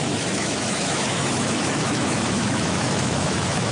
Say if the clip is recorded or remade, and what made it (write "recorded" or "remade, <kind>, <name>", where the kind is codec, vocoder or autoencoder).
remade, autoencoder, DAC-VAE